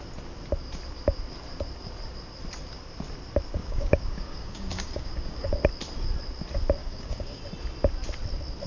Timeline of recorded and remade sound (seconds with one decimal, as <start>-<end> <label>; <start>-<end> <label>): 0.0-3.6 recorded; 3.6-5.5 remade; 5.5-6.8 recorded; 6.8-7.4 remade; 7.4-8.7 recorded